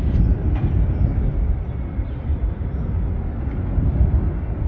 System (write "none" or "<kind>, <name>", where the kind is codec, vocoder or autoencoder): none